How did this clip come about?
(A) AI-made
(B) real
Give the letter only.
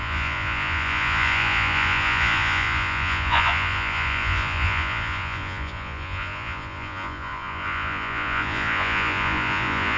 A